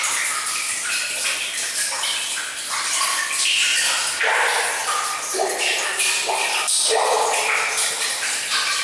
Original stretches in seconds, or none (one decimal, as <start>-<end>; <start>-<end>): 3.7-4.2; 4.8-6.3